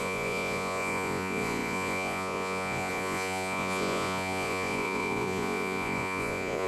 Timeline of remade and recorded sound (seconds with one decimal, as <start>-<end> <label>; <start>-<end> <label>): 0.0-6.7 remade